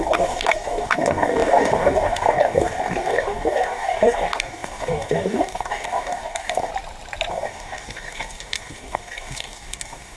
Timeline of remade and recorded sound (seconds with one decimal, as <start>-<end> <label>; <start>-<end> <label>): 0.0-6.7 remade; 6.7-7.3 recorded; 7.3-10.2 remade